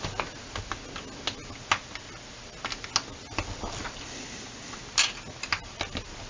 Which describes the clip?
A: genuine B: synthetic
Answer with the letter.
A